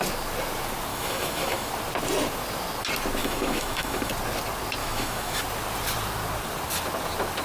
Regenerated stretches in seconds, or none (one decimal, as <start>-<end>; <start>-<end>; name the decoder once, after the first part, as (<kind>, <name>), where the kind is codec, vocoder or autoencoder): 0.9-1.7 (autoencoder, DAC-VAE); 3.2-4.1; 4.8-5.4

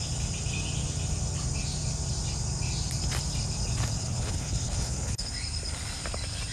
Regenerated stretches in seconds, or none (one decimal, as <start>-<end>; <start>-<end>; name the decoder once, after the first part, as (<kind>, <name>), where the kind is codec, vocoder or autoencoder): 4.0-5.3 (codec, HILCodec)

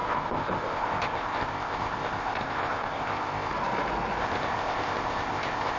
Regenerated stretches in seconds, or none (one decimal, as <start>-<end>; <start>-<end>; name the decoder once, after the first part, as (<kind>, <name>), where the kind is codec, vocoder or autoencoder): 0.0-3.5 (codec, ZipCodec); 4.2-5.8

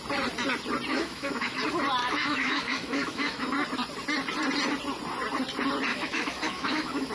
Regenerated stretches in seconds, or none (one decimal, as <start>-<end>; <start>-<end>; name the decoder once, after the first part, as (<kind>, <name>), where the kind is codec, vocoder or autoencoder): 0.9-1.6 (autoencoder, DAC-VAE); 2.0-3.5; 5.9-7.1

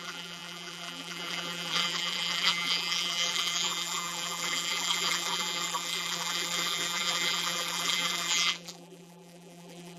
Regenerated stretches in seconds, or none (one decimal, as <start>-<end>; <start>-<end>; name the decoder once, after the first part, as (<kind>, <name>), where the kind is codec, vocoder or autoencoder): 0.0-10.0 (vocoder, BigVGAN v2)